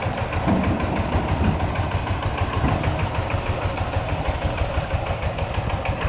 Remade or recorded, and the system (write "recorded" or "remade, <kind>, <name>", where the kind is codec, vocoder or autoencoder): recorded